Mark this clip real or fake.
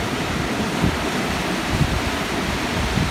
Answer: real